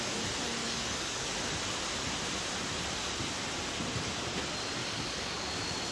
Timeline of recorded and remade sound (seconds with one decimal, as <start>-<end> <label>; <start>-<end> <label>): 0.0-0.6 recorded; 0.6-1.4 remade; 1.4-4.8 recorded; 4.8-5.5 remade; 5.5-5.9 recorded